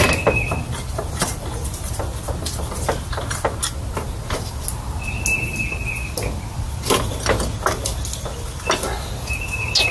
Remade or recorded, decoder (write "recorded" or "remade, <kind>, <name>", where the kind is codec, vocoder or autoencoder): recorded